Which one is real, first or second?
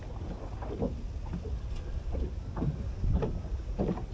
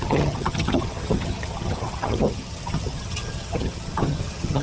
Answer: first